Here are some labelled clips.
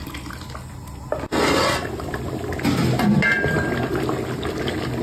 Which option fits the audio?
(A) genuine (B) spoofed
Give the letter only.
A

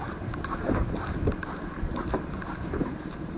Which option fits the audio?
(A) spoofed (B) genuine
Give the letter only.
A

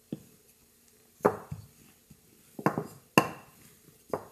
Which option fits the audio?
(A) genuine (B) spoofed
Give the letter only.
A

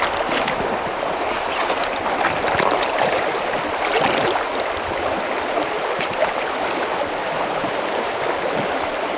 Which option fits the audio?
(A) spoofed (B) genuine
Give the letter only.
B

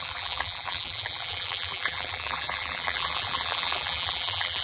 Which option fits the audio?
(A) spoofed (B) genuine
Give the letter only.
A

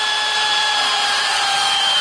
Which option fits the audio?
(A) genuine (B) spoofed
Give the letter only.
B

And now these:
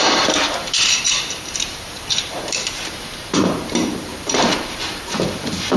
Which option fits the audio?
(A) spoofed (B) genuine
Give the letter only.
A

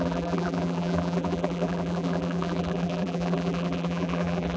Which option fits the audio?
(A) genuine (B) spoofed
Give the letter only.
B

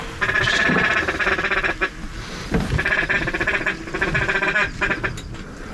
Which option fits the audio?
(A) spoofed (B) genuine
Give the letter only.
B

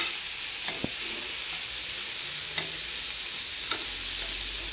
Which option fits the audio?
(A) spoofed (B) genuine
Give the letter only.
B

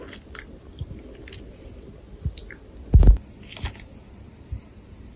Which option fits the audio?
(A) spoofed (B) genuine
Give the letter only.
B